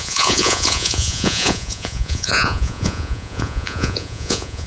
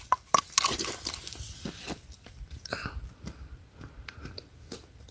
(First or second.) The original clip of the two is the second